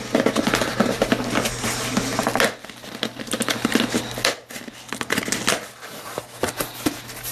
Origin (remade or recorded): recorded